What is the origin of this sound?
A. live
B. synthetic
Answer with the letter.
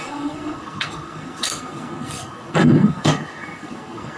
B